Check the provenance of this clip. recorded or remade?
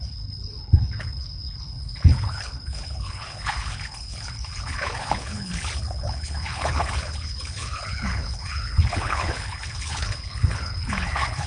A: remade